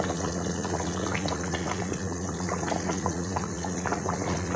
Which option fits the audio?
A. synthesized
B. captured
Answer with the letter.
A